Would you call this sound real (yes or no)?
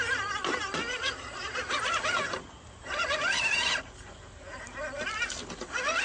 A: yes